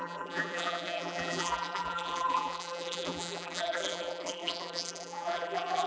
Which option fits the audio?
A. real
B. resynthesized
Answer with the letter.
B